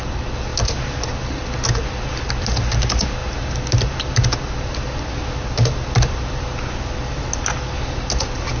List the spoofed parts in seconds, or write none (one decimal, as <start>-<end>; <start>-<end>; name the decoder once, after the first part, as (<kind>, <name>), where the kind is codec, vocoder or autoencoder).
none